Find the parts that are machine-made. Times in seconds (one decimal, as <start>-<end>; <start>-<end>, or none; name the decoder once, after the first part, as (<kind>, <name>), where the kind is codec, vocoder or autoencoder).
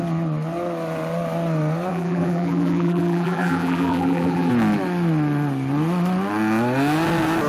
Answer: 1.9-4.5 (vocoder, BigVGAN v2)